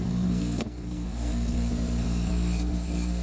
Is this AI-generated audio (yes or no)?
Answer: yes